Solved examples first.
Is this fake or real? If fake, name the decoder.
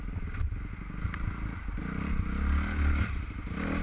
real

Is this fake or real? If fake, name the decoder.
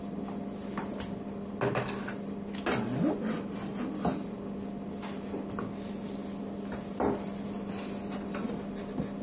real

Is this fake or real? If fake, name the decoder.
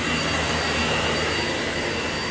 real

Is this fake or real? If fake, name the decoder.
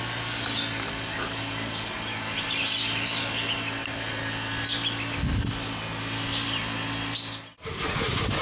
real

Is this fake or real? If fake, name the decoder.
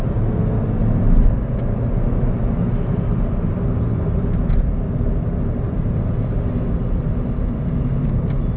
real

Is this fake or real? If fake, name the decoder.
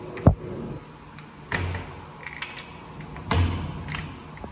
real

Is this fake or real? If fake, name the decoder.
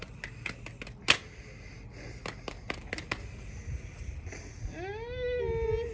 real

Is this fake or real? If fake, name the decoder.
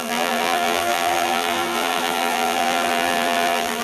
fake, vocoder, BigVGAN v2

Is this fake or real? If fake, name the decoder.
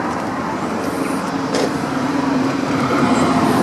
fake, vocoder, BigVGAN v2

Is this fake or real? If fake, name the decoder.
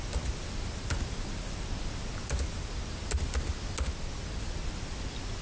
real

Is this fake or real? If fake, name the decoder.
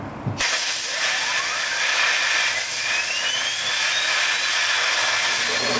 real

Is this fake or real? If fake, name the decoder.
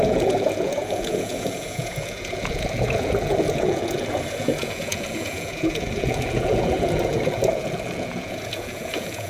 fake, vocoder, Vocos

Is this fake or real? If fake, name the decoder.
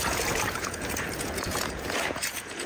fake, vocoder, Vocos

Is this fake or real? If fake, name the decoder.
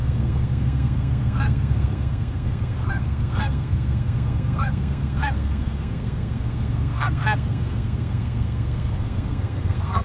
fake, codec, SNAC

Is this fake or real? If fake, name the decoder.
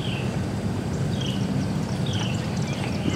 real